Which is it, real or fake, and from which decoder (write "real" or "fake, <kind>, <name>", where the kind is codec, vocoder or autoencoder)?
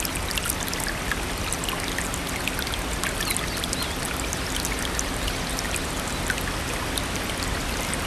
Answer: real